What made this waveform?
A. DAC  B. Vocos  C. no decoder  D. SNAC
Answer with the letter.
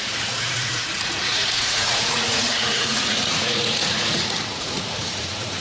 B